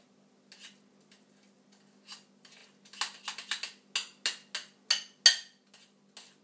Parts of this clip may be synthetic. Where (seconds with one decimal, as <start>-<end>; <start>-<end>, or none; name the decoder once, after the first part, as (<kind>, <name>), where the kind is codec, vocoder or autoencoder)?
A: none